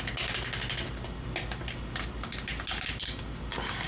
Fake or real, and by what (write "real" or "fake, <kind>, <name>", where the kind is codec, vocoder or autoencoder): real